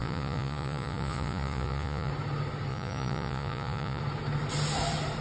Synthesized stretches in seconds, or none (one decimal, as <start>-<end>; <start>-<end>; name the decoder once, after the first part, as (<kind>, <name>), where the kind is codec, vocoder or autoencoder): 0.0-2.1 (vocoder, Vocos); 2.7-4.0